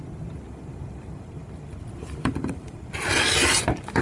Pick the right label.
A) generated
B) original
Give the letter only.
A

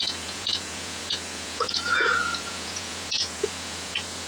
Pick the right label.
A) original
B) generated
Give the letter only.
B